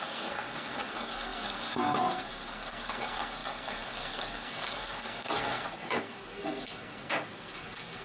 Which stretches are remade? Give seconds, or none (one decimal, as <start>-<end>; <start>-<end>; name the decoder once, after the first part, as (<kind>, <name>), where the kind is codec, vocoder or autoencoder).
0.0-8.0 (codec, SNAC)